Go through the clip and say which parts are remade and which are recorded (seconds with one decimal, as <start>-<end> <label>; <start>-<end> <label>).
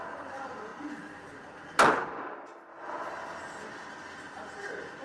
0.0-5.0 recorded